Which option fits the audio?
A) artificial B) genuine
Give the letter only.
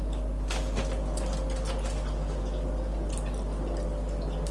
B